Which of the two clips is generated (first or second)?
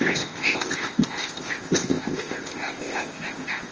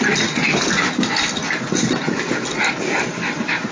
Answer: first